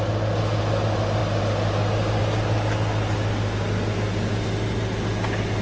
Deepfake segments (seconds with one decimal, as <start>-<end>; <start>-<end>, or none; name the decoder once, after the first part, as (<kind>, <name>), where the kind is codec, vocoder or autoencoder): none